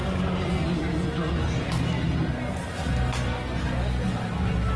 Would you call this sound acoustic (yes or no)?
yes